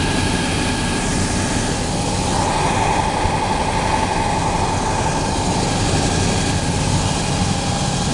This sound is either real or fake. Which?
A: real